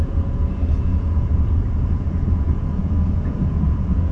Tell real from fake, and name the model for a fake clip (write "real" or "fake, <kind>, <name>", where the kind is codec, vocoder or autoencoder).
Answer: fake, vocoder, Vocos